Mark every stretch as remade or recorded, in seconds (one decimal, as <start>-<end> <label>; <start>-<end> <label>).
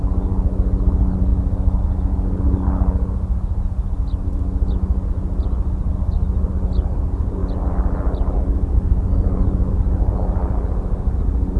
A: 0.0-11.6 recorded